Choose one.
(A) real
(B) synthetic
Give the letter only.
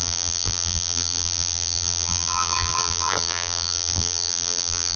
B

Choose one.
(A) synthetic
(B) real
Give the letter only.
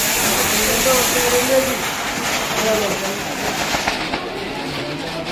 B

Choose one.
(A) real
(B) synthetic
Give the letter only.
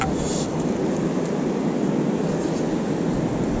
A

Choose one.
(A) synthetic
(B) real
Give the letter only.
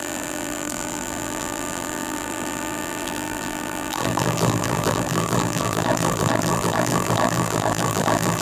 A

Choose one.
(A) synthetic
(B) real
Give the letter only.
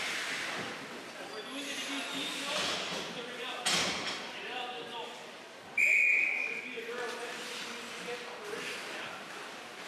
B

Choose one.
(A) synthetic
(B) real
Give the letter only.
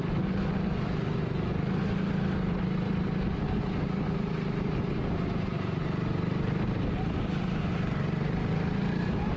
B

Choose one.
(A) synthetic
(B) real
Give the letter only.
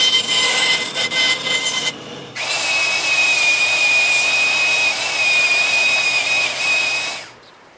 A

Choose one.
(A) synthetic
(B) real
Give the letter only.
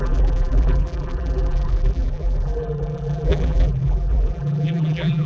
A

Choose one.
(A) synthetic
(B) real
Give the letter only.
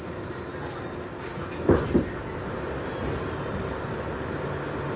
B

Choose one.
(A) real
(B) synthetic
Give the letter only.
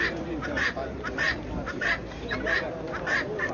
B